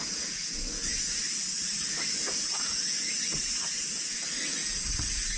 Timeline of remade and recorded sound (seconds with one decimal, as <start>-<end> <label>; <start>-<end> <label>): 0.0-1.2 remade; 1.2-1.8 recorded; 1.8-5.4 remade